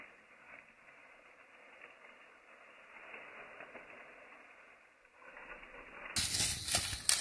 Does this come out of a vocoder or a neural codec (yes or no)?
no